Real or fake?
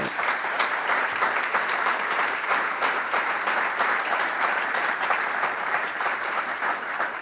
fake